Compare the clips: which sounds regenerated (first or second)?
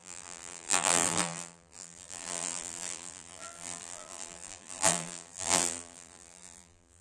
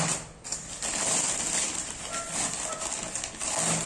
first